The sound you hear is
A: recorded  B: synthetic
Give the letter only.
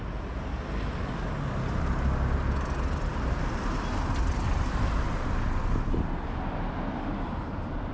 A